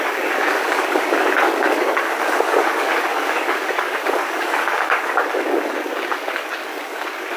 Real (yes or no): no